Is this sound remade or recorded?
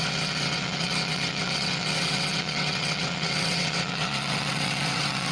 remade